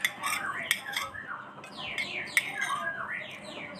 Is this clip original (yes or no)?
yes